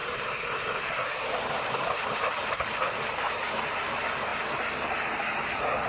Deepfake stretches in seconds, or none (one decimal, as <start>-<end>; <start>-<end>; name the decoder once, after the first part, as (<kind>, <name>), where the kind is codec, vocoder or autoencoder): 0.0-3.5 (vocoder, BigVGAN v2)